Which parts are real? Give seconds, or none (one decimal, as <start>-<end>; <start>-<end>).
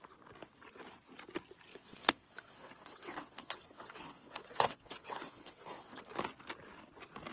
0.0-1.7; 6.0-7.3